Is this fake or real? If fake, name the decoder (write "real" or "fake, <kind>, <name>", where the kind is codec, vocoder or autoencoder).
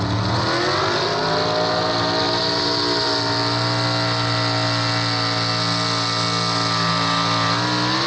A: real